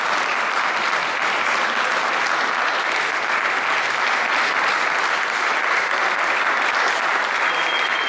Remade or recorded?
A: recorded